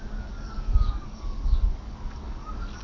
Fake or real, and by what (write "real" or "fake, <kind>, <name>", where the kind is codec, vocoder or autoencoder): fake, codec, DAC